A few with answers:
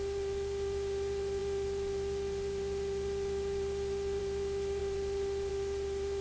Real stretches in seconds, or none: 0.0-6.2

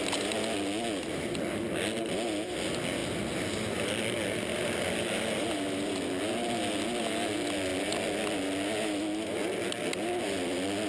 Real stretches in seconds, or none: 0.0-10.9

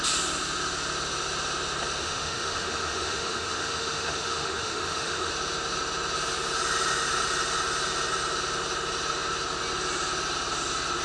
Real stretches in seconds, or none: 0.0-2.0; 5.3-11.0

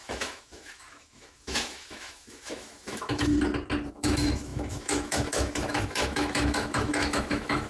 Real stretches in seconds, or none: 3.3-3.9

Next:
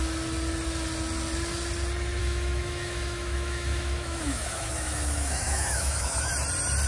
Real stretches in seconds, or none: 0.0-2.2; 6.3-6.9

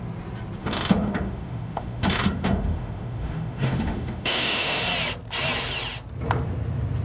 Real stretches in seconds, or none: 0.0-0.6; 4.8-7.0

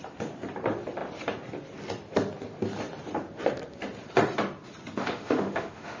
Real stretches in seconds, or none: 0.0-5.0